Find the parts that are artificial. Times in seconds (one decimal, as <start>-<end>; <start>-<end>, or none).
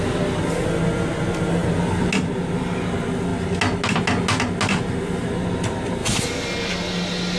none